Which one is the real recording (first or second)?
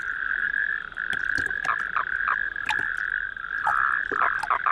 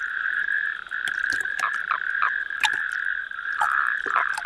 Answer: first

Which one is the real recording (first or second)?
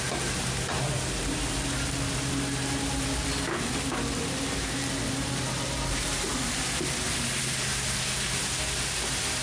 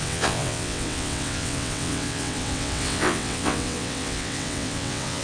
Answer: first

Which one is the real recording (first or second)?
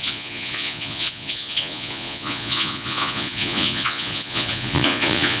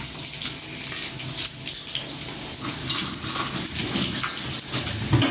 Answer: second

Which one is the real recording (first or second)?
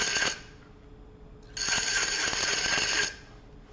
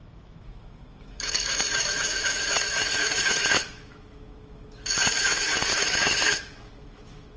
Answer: first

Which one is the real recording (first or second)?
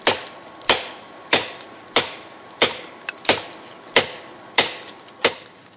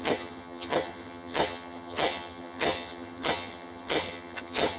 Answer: first